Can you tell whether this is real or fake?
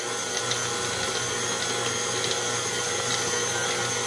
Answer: real